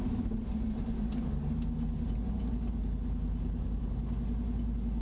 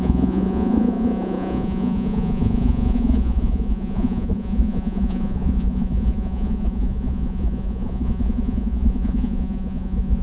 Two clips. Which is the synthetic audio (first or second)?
second